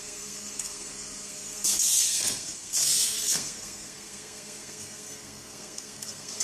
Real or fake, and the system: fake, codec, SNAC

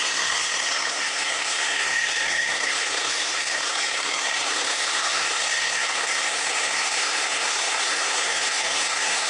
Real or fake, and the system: fake, codec, SNAC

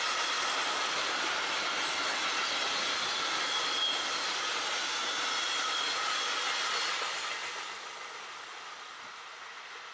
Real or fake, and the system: real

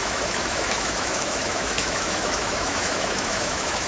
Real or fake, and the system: fake, autoencoder, DAC-VAE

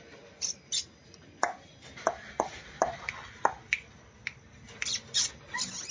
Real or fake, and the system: real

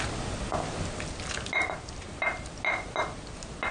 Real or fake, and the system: real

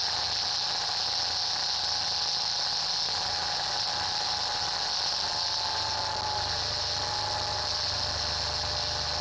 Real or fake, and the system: real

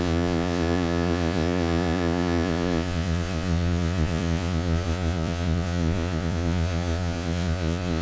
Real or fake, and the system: fake, vocoder, Vocos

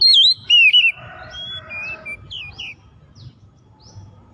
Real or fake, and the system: real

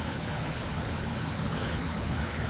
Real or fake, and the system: fake, codec, HILCodec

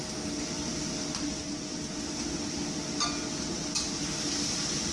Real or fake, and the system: real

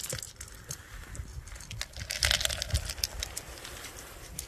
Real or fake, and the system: real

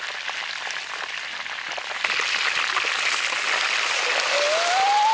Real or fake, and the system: fake, vocoder, BigVGAN v2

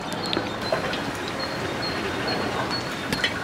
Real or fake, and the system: real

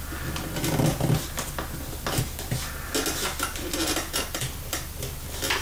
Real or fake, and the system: real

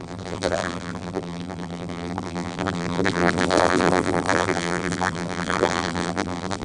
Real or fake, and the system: fake, vocoder, BigVGAN v2